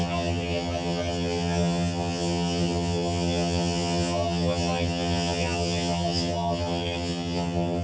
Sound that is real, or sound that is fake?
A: fake